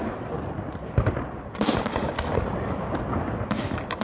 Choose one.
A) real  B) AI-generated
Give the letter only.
A